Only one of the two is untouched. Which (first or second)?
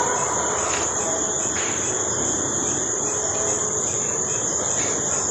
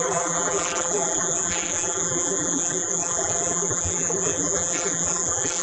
first